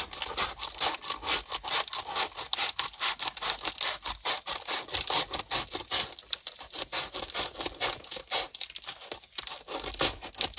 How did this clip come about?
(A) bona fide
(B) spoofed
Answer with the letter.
A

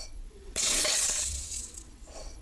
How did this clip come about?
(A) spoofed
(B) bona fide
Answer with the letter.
A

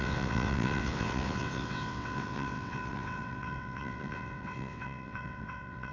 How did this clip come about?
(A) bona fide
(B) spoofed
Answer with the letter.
B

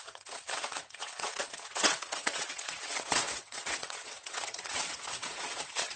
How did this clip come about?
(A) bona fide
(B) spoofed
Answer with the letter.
B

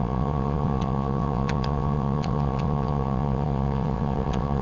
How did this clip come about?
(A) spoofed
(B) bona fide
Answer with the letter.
A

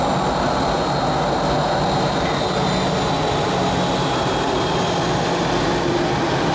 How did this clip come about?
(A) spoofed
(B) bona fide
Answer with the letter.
B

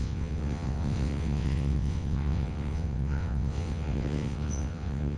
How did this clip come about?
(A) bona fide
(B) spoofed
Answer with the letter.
B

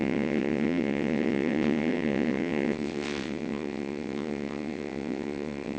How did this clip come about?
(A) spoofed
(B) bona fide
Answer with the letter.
A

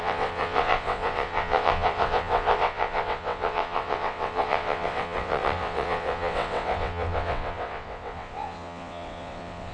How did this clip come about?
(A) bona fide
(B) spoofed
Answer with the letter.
B